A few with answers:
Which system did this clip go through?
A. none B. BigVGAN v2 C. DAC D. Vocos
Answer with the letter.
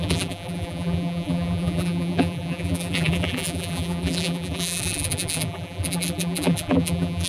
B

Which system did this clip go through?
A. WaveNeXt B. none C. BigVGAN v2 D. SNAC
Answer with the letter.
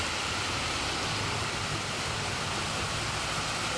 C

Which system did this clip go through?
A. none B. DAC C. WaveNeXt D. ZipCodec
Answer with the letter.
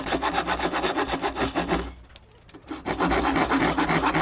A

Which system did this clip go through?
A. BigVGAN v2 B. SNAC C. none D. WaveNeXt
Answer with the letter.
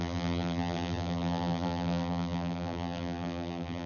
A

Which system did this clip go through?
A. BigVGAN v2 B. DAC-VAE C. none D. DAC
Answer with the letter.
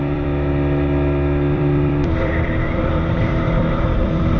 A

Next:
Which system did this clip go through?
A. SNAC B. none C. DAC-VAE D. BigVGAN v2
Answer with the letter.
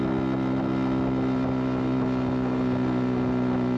B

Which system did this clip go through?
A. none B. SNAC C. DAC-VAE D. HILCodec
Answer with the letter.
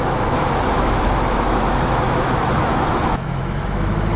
C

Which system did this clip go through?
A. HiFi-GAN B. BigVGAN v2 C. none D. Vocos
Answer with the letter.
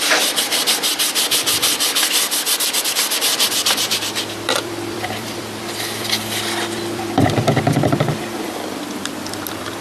B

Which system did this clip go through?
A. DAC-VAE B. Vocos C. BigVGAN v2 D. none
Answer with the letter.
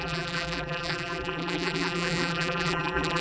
C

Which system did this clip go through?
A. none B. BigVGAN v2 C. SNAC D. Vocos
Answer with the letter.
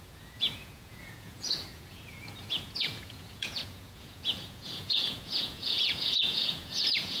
D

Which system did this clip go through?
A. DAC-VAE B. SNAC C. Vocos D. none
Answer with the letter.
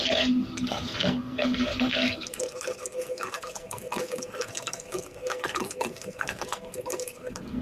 B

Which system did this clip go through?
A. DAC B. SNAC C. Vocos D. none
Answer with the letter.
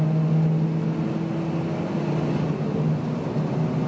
D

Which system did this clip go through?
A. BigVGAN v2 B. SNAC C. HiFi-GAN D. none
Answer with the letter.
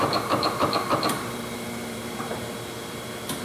A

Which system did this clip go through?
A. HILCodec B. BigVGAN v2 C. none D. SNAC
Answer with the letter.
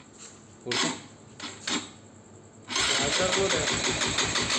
C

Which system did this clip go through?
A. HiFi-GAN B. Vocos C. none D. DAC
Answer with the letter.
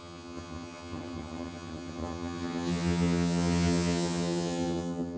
A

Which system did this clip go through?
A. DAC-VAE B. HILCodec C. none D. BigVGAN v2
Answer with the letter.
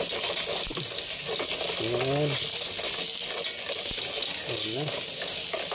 C